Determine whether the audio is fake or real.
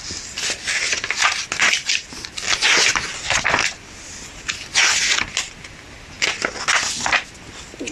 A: real